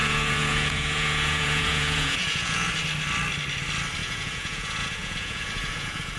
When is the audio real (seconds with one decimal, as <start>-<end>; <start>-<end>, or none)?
2.7-4.0